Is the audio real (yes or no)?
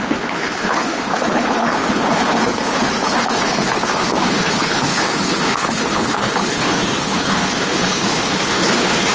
no